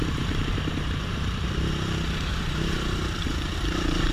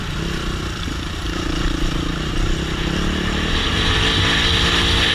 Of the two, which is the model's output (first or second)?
first